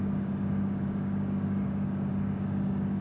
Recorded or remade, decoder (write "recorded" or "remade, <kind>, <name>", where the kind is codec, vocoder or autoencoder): remade, codec, DAC